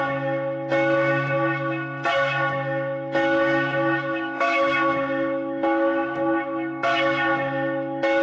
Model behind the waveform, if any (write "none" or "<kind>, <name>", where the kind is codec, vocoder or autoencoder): autoencoder, DAC-VAE